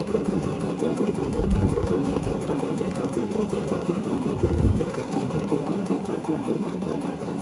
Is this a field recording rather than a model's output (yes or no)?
no